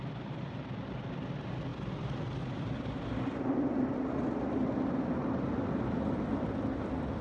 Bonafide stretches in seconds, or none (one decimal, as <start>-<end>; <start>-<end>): 0.0-7.2